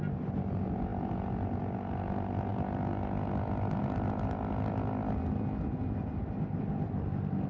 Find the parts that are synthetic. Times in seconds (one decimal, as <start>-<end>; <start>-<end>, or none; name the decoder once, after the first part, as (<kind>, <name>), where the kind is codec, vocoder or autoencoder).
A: none